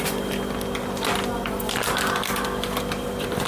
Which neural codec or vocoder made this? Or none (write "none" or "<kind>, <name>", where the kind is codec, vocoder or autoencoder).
none